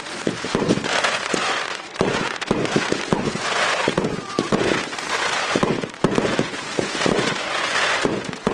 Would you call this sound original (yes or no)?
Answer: no